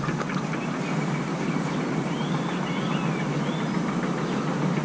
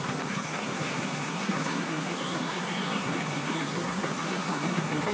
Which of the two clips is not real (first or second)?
second